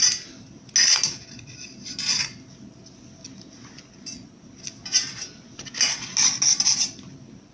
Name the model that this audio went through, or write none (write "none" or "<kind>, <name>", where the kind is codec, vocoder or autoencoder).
none